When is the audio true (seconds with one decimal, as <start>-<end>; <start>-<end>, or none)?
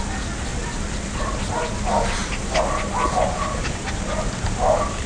0.0-0.5; 1.6-2.2